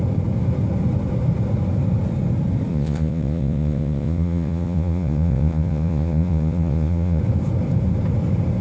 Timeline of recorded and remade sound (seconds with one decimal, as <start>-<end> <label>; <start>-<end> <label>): 0.0-2.7 recorded; 2.7-7.2 remade; 7.2-8.6 recorded